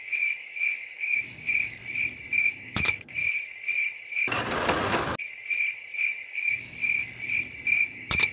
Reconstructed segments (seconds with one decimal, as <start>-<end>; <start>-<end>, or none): 0.0-1.8; 2.4-3.2; 6.3-7.0; 7.8-8.3